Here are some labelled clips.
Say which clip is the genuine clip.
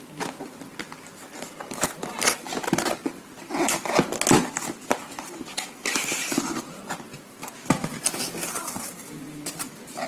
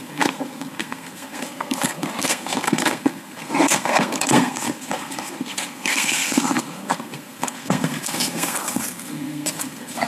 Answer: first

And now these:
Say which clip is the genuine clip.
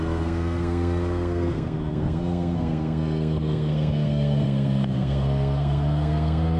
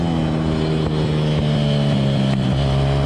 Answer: second